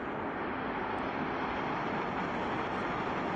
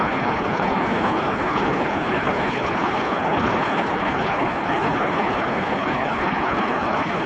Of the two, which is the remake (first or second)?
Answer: second